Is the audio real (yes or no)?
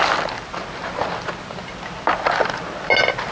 yes